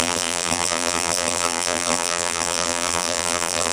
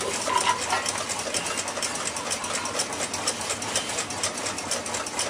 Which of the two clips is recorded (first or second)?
second